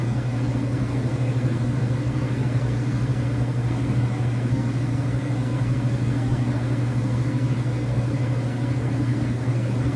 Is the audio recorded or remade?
remade